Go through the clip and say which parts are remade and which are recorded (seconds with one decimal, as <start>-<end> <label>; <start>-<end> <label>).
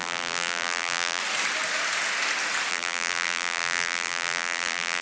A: 0.0-1.2 remade; 1.2-2.7 recorded; 2.7-5.0 remade